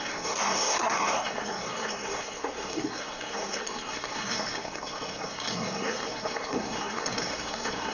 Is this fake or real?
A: fake